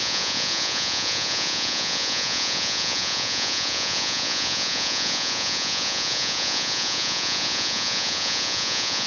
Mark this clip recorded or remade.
remade